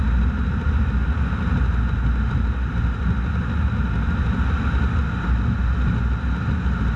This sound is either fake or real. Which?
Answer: real